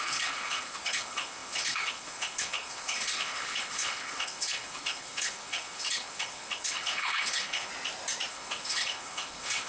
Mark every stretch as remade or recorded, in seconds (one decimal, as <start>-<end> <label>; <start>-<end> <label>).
0.0-7.7 remade; 7.7-8.3 recorded; 8.3-9.7 remade